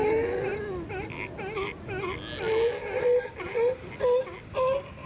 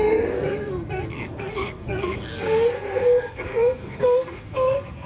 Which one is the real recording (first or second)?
first